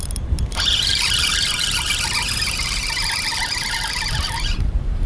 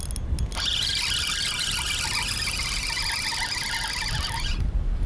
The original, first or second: second